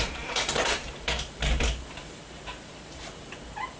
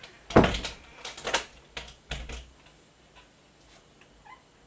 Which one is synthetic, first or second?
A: first